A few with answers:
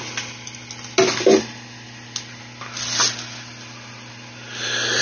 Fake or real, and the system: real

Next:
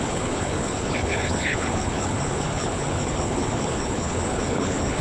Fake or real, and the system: fake, codec, HILCodec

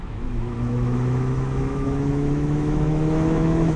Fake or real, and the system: fake, autoencoder, DAC-VAE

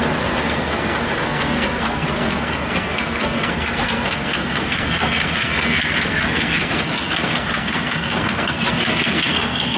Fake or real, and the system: fake, codec, SNAC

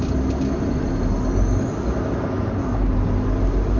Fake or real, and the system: real